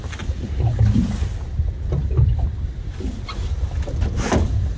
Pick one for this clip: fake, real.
real